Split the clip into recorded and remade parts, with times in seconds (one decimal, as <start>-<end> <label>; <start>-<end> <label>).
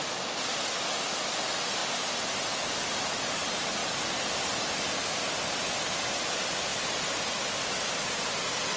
0.0-8.8 recorded